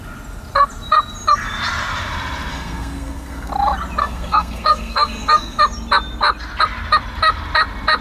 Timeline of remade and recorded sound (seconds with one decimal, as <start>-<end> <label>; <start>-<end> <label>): 0.0-2.5 recorded; 2.5-3.5 remade; 3.5-4.0 recorded; 4.0-5.6 remade; 5.6-8.0 recorded